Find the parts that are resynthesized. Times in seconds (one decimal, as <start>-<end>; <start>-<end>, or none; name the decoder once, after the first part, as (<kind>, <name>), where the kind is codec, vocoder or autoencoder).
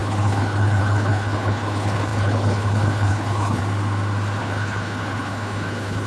0.0-3.6 (codec, HILCodec); 4.4-6.1